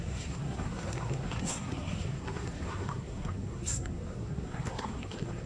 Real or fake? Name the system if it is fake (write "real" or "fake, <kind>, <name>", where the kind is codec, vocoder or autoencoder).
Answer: fake, codec, SNAC